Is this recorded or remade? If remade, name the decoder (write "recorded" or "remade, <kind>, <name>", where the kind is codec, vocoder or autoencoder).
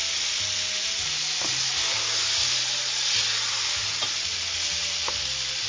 recorded